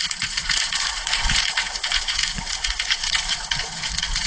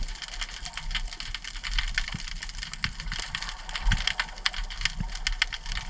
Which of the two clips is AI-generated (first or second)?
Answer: first